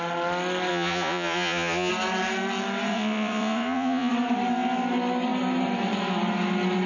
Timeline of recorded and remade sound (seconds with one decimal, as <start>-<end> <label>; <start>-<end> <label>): 0.0-0.7 recorded; 0.7-1.9 remade; 1.9-2.9 recorded; 2.9-4.1 remade; 4.1-6.9 recorded